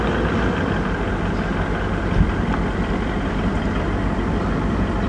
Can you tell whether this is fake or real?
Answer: real